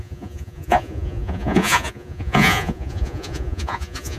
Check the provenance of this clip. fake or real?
fake